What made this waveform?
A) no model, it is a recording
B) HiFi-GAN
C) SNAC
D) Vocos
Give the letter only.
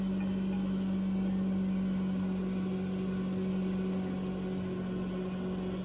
A